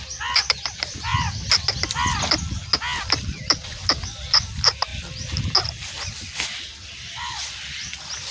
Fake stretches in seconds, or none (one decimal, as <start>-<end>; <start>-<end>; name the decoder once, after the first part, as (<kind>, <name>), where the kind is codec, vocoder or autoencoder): 0.0-1.1 (vocoder, BigVGAN v2); 3.0-4.9; 6.6-8.3